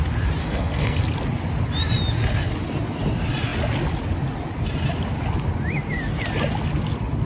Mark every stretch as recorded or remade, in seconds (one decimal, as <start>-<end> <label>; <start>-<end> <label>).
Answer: 0.0-0.4 recorded; 0.4-1.0 remade; 1.0-7.3 recorded